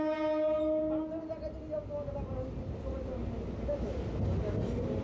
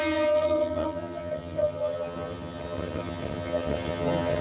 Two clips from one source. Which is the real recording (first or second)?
first